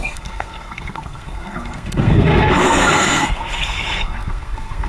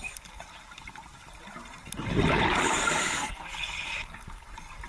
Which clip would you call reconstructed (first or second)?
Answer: first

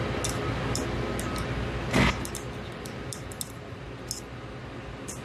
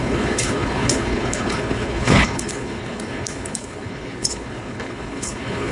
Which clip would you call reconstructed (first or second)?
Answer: second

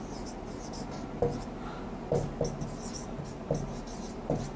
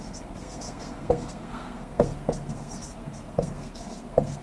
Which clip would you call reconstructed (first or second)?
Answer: second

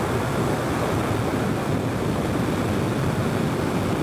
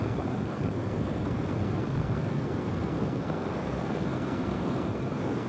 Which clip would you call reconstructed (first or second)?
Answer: second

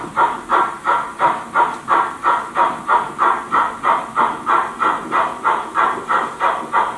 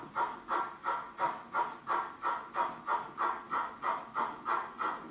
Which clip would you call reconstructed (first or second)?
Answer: first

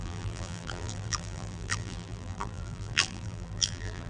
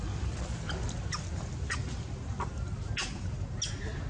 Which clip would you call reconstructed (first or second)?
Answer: first